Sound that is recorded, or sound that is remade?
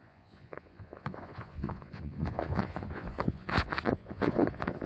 remade